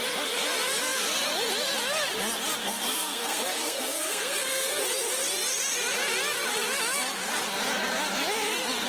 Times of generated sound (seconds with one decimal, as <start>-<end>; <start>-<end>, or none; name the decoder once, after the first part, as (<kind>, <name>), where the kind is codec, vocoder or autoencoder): 2.6-4.8 (codec, SNAC)